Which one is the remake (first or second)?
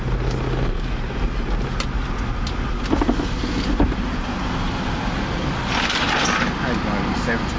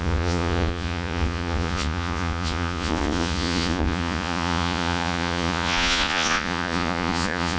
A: second